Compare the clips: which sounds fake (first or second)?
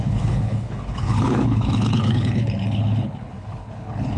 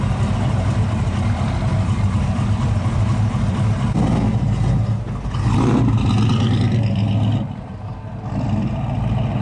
first